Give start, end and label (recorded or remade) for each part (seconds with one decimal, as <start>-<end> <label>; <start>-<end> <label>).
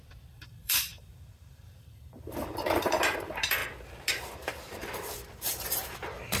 0.0-0.9 remade; 0.9-1.5 recorded; 1.5-3.6 remade; 3.6-4.1 recorded; 4.1-6.4 remade